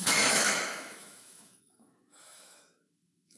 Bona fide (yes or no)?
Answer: no